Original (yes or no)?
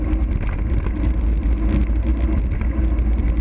yes